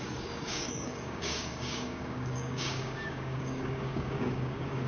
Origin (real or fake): fake